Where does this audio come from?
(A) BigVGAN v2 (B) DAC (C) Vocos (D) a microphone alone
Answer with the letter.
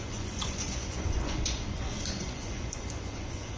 C